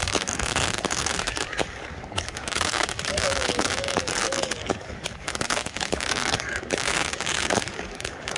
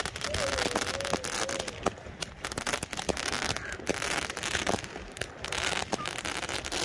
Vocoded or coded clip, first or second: first